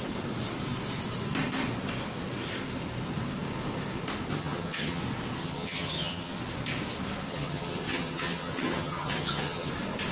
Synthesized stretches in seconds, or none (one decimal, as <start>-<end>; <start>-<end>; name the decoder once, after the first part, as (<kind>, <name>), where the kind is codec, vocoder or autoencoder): 4.3-5.0 (vocoder, HiFi-GAN); 5.4-6.4; 7.3-9.7